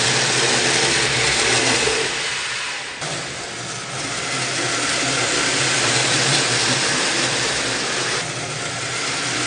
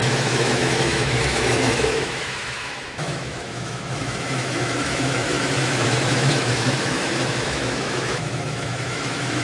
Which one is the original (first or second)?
first